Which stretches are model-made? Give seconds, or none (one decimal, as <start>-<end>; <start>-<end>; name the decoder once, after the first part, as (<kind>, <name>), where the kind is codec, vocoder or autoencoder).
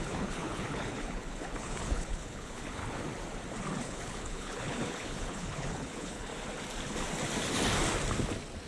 0.0-2.8 (codec, HILCodec); 3.8-6.3